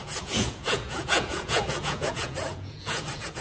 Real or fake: fake